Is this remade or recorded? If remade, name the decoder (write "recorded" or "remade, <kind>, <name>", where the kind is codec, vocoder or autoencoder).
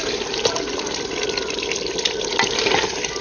recorded